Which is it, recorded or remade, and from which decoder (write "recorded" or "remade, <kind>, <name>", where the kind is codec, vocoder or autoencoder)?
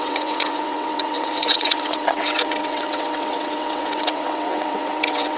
remade, vocoder, WaveNeXt